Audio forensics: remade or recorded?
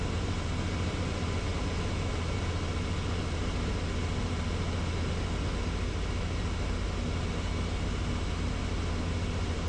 recorded